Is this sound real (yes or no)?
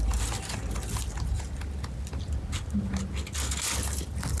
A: yes